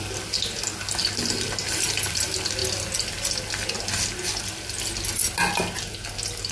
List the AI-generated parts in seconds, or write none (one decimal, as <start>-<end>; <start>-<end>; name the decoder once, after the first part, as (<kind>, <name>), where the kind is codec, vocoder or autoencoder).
none